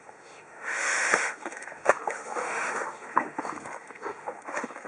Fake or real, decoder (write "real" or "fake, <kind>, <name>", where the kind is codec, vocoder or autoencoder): fake, autoencoder, DAC-VAE